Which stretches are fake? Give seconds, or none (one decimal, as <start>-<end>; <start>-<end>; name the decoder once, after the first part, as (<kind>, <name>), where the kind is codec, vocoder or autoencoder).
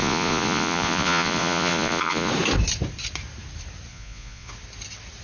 0.0-2.3 (vocoder, Vocos); 3.9-4.5